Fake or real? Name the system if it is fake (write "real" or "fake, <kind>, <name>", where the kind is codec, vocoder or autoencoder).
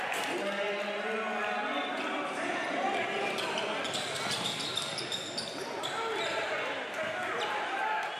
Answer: real